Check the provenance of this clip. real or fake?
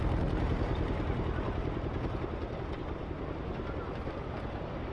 real